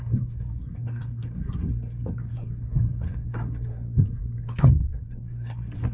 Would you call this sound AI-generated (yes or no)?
yes